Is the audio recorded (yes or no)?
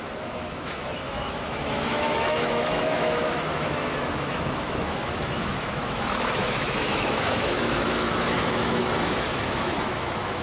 no